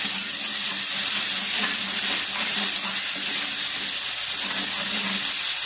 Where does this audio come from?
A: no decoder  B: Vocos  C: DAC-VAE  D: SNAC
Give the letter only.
A